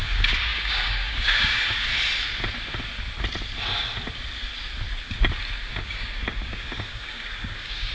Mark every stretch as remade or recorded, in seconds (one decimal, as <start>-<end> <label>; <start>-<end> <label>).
0.0-1.9 remade; 1.9-5.7 recorded; 5.7-7.9 remade